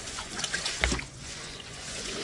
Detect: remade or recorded remade